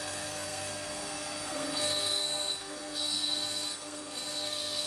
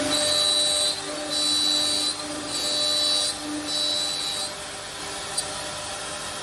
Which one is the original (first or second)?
second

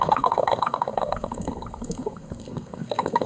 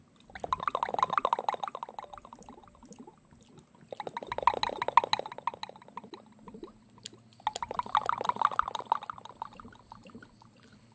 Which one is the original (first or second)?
second